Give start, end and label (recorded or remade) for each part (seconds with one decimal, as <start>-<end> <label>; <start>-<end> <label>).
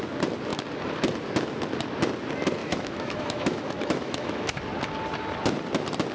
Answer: 0.0-2.6 recorded; 2.6-4.6 remade; 4.6-6.1 recorded